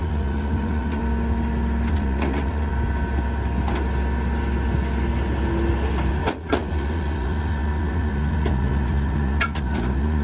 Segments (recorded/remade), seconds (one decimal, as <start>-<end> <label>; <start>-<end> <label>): 0.0-1.0 remade; 1.0-1.9 recorded; 1.9-2.7 remade; 2.7-6.1 recorded; 6.1-10.2 remade